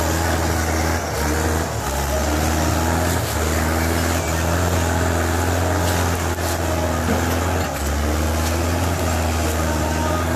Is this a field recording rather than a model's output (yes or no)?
yes